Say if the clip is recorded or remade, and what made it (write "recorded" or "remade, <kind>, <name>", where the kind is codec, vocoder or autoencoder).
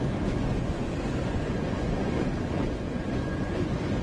remade, vocoder, Vocos